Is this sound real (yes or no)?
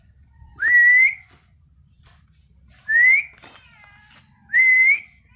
yes